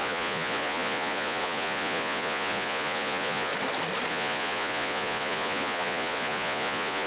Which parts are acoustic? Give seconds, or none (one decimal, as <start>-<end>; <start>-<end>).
3.5-4.1